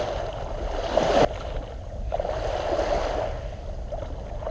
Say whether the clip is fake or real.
real